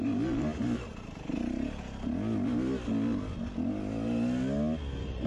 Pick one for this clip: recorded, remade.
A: recorded